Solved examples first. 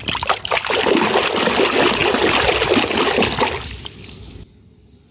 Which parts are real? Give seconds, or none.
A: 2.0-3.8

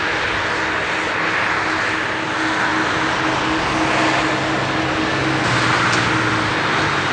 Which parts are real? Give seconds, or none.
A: 0.0-7.1

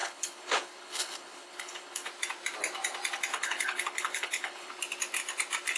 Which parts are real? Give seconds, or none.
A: 2.1-3.3; 4.7-5.8

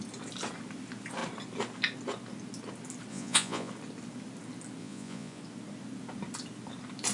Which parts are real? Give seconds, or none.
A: 0.0-3.1; 3.7-4.8; 5.4-7.1

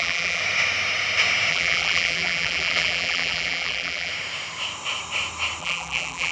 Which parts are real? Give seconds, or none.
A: 0.4-1.5; 4.1-5.6